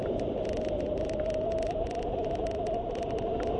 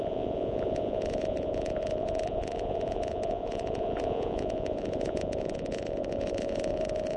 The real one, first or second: first